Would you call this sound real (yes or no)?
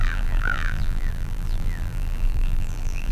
no